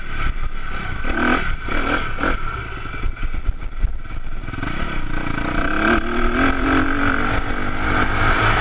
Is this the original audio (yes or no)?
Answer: yes